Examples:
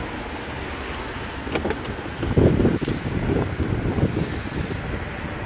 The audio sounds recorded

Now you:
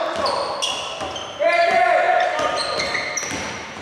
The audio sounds recorded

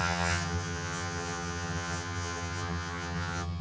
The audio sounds remade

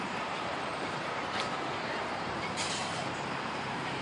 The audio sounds remade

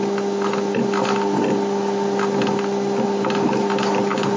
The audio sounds recorded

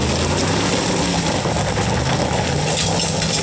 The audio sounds recorded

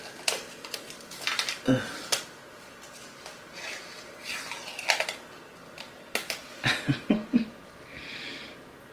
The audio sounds recorded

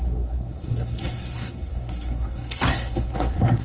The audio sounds remade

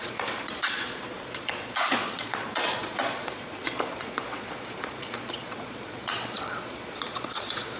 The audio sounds remade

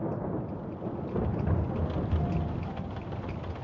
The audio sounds recorded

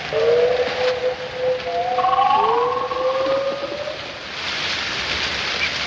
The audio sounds recorded